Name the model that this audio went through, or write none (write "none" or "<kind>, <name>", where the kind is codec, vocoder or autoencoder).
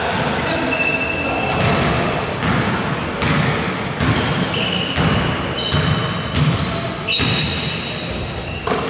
none